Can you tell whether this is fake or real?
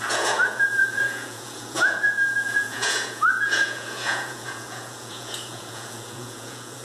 fake